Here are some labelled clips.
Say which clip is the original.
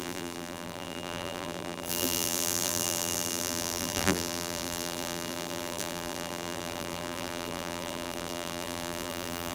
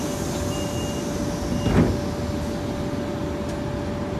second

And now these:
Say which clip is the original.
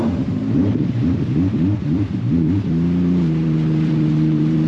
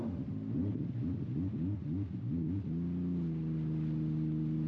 second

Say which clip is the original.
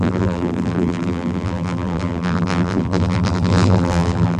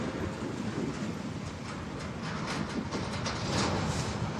second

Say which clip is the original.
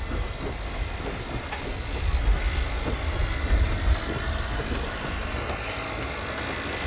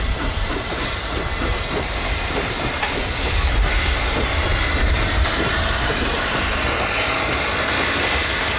first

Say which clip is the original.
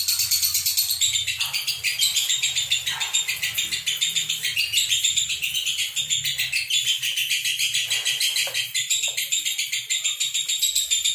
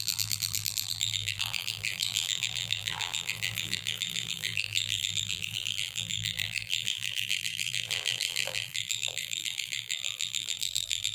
first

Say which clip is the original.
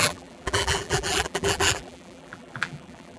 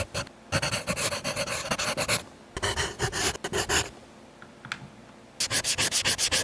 second